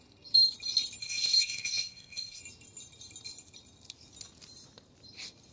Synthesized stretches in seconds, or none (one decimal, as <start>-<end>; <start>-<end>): 1.0-2.4